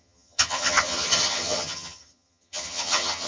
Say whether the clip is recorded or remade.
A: remade